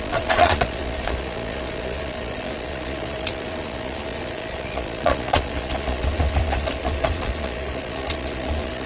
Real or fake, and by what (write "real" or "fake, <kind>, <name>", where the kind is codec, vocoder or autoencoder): fake, vocoder, Vocos